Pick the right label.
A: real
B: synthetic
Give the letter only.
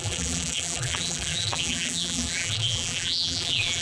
B